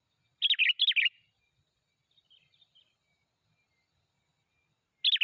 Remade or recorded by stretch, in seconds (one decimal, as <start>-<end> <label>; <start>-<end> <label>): 0.0-5.2 recorded